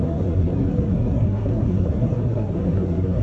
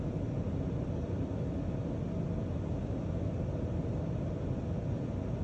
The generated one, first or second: first